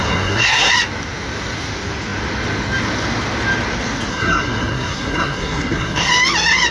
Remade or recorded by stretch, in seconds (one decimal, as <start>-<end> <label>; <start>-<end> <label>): 0.0-0.7 remade; 0.7-4.1 recorded; 4.1-6.1 remade; 6.1-6.7 recorded